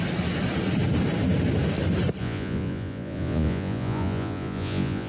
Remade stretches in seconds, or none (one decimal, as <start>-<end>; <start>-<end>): 2.2-5.1